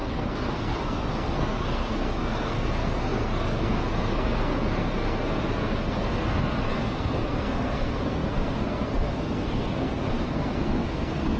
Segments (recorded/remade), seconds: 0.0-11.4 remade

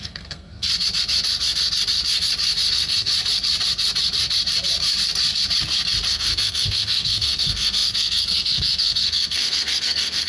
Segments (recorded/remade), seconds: 0.0-0.7 remade; 0.7-2.7 recorded; 2.7-3.1 remade; 3.1-6.1 recorded; 6.1-10.3 remade

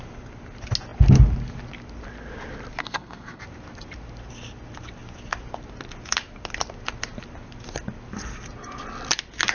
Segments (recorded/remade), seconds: 0.0-2.8 recorded; 2.8-3.4 remade; 3.4-9.5 recorded

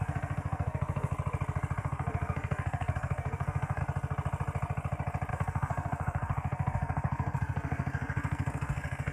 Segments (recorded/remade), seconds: 0.0-1.1 remade; 1.1-1.8 recorded; 1.8-3.8 remade; 3.8-5.3 recorded; 5.3-9.1 remade